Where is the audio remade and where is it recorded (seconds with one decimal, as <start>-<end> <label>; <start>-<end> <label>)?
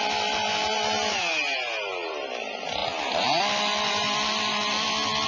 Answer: 0.0-5.3 recorded